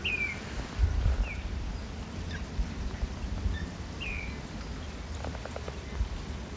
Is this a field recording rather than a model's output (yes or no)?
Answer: yes